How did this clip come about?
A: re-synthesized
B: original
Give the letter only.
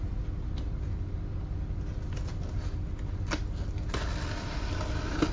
B